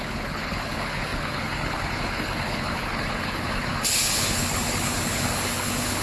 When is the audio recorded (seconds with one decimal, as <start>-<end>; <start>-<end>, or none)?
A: none